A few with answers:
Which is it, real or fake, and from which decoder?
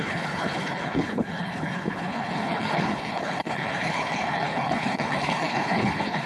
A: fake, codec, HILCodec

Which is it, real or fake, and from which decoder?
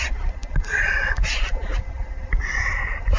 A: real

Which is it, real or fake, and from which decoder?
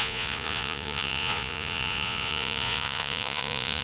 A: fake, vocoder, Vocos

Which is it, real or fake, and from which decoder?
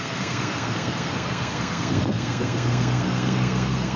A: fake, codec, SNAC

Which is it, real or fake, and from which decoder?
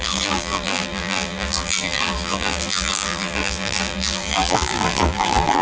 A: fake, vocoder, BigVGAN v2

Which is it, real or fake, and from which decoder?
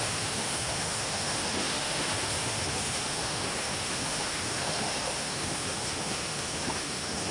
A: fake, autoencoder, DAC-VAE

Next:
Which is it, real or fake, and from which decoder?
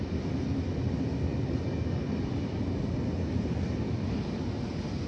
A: real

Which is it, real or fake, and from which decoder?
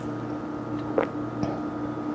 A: real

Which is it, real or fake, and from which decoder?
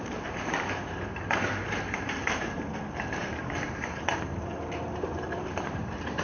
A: fake, vocoder, BigVGAN v2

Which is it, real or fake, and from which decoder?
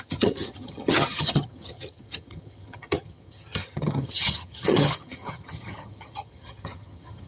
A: fake, vocoder, HiFi-GAN